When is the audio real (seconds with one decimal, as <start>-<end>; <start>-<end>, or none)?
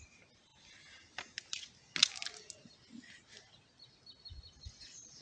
0.0-5.2